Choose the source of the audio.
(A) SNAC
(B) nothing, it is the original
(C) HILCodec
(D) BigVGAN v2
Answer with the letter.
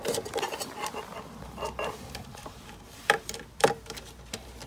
D